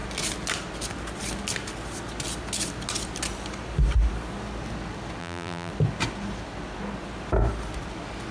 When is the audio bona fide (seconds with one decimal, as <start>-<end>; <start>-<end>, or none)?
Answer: 0.0-5.2; 5.7-8.3